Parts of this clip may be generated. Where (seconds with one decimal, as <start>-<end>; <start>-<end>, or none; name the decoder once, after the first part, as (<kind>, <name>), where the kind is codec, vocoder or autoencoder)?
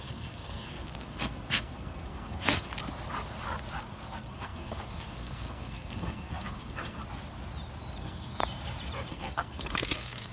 0.0-2.7 (codec, SNAC); 3.8-7.0; 8.0-8.4; 9.1-10.3